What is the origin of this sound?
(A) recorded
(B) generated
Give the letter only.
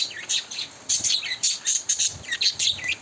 A